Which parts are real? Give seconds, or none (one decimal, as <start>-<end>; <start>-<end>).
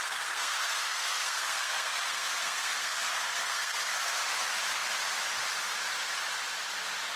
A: 3.9-7.2